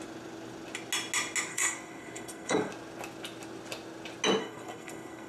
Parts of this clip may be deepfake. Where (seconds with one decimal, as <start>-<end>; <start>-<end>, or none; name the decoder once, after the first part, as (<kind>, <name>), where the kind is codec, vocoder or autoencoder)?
1.5-2.7 (codec, SNAC); 4.4-5.3